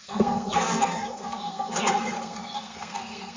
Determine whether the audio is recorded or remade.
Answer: remade